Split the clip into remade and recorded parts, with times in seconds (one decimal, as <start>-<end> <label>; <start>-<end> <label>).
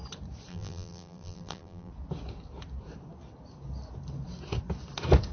0.0-0.5 recorded; 0.5-1.9 remade; 1.9-5.3 recorded